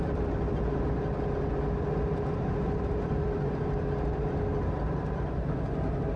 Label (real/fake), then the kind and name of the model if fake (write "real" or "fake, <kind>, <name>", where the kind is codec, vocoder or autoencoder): real